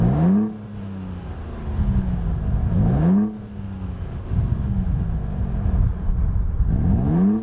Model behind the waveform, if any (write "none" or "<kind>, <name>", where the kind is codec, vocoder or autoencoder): none